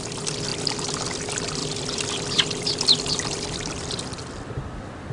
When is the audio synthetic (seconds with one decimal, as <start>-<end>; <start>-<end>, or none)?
0.5-1.0; 1.6-5.1